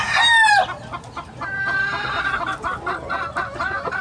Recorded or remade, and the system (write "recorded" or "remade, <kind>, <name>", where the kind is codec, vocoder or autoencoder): recorded